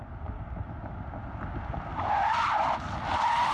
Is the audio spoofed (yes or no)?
no